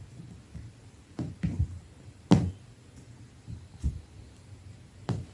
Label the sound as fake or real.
real